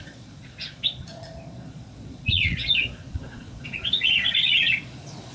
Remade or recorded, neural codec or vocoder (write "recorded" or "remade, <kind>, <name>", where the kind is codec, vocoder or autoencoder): remade, vocoder, Vocos